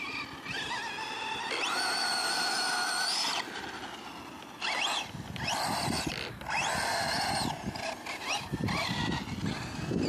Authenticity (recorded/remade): recorded